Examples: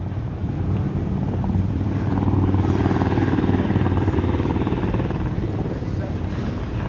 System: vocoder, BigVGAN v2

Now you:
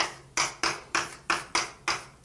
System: none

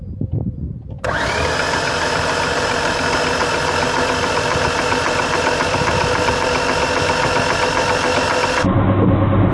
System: none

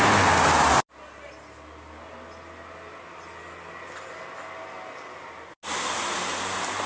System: none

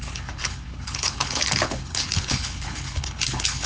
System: codec, HILCodec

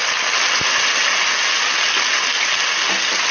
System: none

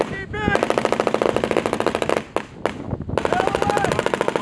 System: none